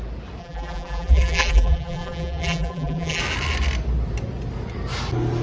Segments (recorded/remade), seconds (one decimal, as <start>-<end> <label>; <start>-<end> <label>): 0.0-0.4 recorded; 0.4-3.2 remade; 3.2-5.4 recorded